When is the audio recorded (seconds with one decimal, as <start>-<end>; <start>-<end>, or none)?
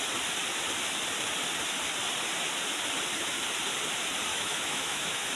0.0-4.3